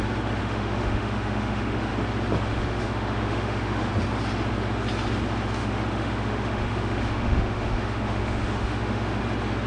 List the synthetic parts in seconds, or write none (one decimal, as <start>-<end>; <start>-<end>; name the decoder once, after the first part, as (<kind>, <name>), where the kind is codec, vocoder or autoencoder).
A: 0.4-1.9 (autoencoder, DAC-VAE); 2.5-3.9; 5.6-9.2

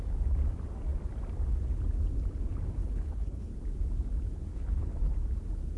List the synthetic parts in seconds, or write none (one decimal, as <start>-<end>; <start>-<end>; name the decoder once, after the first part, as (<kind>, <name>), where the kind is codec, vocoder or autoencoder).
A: 2.8-3.5 (codec, HILCodec); 4.5-5.1